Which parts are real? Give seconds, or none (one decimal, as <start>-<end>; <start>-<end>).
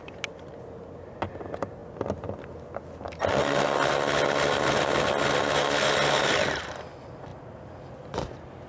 0.0-8.7